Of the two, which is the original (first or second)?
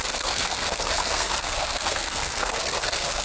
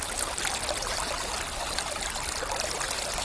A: second